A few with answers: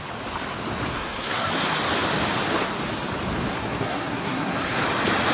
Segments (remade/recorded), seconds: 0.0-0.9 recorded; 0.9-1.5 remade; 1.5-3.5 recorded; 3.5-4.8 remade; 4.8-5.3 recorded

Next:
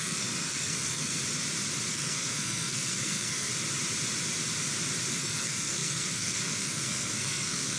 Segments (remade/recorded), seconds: 0.0-1.2 remade; 1.2-1.9 recorded; 1.9-3.5 remade; 3.5-5.1 recorded; 5.1-7.8 remade

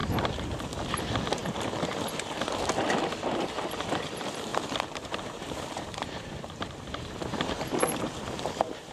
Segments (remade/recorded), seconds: 0.0-0.6 remade; 0.6-1.4 recorded; 1.4-2.0 remade; 2.0-4.5 recorded; 4.5-8.9 remade

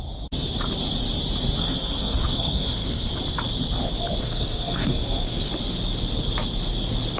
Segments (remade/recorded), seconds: 0.0-1.6 recorded; 1.6-3.1 remade; 3.1-4.2 recorded; 4.2-5.5 remade; 5.5-7.2 recorded